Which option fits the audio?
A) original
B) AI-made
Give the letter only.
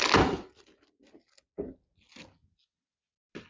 A